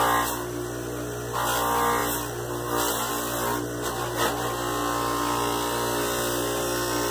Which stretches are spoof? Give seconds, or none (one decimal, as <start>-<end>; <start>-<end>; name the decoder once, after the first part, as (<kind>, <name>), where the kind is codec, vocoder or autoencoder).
none